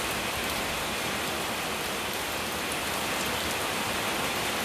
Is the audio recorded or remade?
recorded